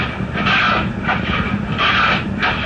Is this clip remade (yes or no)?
no